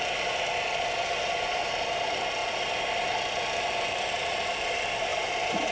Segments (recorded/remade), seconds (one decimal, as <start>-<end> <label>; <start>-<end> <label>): 0.0-5.1 recorded; 5.1-5.7 remade